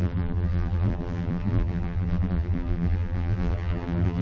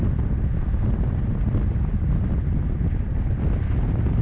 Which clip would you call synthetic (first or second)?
first